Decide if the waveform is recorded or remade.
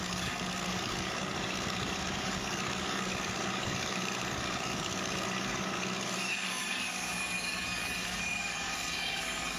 remade